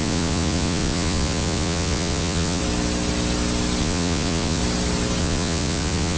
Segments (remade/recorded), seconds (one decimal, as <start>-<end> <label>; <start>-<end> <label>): 0.0-2.6 remade; 2.6-3.8 recorded; 3.8-4.6 remade; 4.6-5.2 recorded; 5.2-6.2 remade